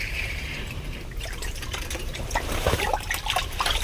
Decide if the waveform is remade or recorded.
remade